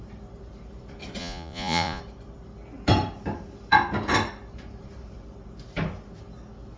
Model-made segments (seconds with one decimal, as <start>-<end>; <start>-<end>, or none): 1.2-2.0